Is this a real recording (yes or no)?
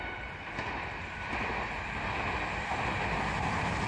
yes